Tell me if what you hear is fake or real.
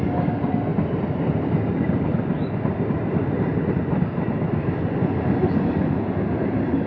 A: real